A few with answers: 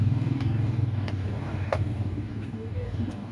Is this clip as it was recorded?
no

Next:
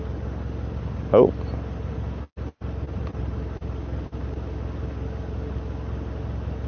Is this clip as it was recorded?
yes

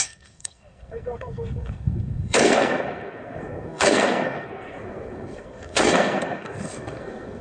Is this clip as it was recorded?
no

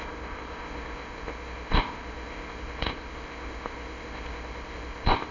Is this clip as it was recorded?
no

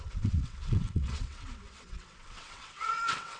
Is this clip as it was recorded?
no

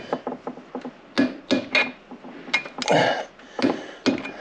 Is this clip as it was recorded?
yes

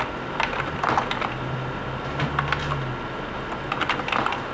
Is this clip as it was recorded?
yes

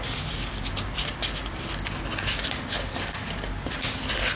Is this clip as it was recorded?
yes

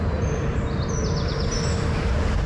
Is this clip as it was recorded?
yes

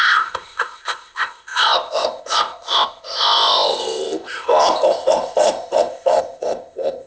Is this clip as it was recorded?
no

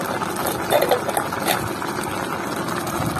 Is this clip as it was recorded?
yes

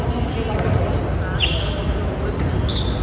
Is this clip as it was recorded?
yes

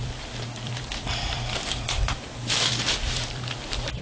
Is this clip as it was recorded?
no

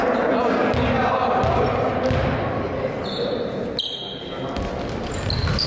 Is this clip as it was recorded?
yes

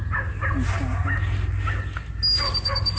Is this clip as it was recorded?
yes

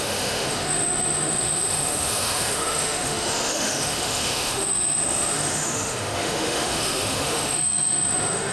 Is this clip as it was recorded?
no